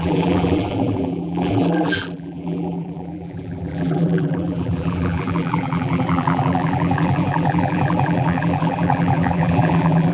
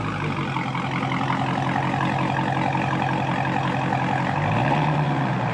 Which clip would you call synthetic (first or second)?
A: first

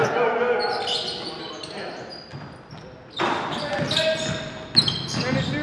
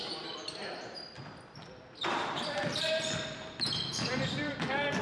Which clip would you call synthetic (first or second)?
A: second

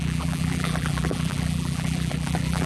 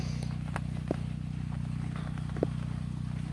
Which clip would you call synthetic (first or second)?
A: first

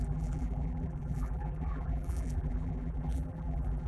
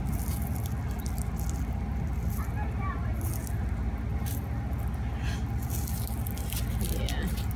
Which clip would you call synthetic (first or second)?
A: first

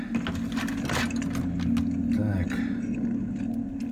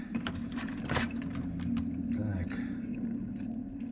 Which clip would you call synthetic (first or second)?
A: second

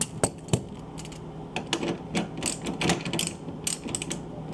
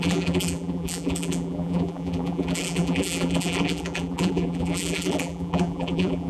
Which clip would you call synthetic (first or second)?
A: second